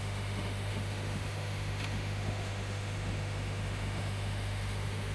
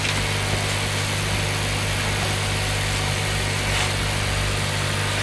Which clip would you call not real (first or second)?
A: first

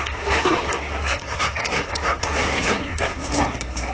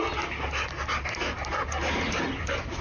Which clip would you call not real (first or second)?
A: first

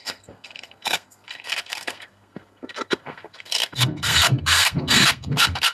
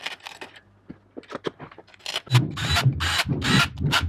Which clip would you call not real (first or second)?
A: first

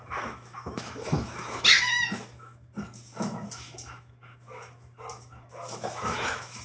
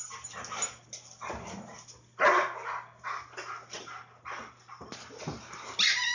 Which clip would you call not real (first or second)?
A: first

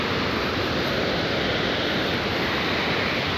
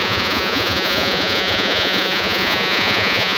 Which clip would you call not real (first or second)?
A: second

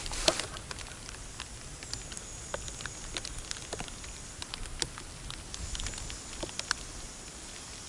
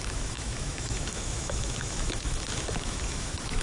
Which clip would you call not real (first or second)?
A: second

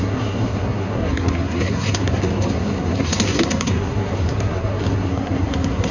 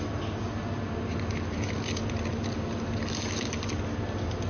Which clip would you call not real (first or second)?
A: first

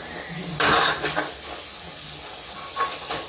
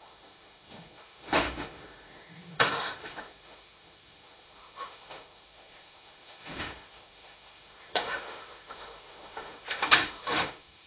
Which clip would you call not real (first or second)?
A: second